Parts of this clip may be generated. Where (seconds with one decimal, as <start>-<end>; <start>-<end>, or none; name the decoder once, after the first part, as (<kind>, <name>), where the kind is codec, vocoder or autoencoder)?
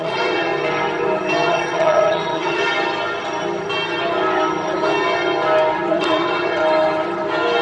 0.0-0.5 (vocoder, WaveNeXt); 1.5-2.6; 5.9-6.6